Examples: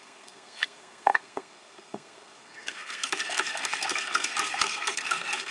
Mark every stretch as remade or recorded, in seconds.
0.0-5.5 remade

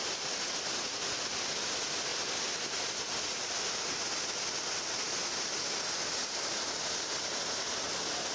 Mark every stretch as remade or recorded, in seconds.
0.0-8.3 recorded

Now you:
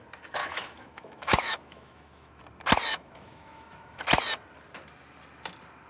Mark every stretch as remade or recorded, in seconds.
0.0-0.4 recorded; 0.4-2.4 remade; 2.4-2.9 recorded; 2.9-4.0 remade; 4.0-5.9 recorded